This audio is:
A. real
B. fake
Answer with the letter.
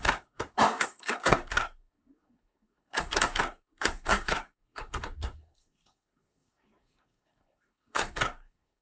B